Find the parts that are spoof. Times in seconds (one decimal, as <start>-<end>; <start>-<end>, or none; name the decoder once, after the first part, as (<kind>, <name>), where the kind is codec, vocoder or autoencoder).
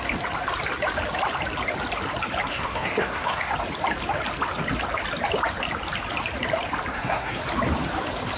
2.5-3.5 (codec, SNAC); 6.9-7.4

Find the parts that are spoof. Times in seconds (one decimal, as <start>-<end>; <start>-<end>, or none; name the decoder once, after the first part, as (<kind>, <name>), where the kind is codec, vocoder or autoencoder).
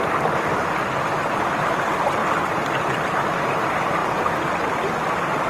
none